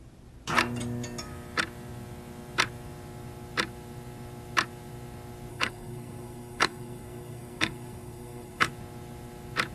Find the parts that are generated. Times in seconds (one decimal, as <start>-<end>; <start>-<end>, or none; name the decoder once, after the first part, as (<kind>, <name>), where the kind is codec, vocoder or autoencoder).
5.5-8.7 (codec, SNAC)